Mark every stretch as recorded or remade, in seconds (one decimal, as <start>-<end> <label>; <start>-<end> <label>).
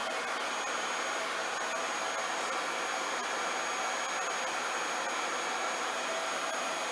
0.0-6.9 recorded